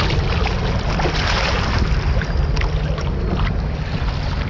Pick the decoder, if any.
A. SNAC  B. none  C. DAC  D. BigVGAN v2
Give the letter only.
B